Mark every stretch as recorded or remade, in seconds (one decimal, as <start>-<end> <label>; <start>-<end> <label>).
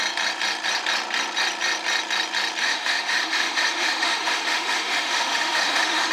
0.0-2.6 recorded; 2.6-6.1 remade